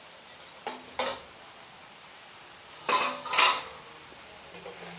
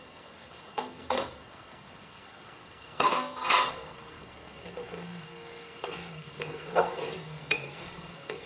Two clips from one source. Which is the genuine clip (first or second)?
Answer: first